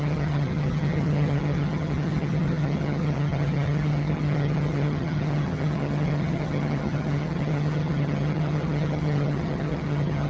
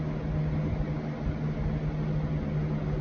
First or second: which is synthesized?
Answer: first